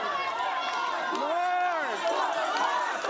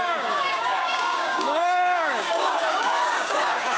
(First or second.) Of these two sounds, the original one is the first